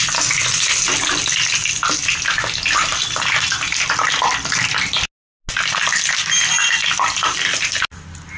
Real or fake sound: real